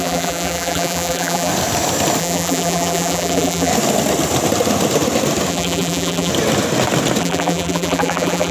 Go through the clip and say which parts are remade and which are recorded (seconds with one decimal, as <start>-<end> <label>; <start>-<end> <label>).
0.0-1.5 remade; 1.5-2.2 recorded; 2.2-3.7 remade; 3.7-5.5 recorded; 5.5-6.3 remade; 6.3-7.2 recorded; 7.2-8.5 remade